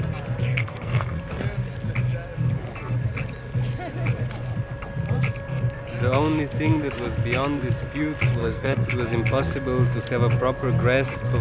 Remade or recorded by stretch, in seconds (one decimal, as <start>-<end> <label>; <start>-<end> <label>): 0.0-0.5 recorded; 0.5-1.2 remade; 1.2-8.4 recorded; 8.4-8.9 remade; 8.9-11.4 recorded